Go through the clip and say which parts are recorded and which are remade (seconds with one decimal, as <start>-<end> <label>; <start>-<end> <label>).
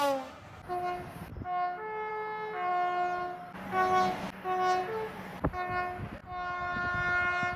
0.0-7.6 recorded